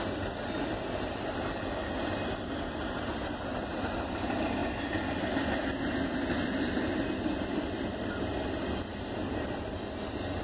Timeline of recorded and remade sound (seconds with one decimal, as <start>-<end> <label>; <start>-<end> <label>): 0.0-10.4 recorded